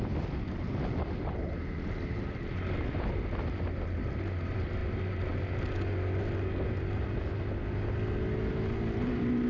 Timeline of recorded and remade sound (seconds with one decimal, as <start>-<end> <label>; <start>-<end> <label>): 0.0-9.5 recorded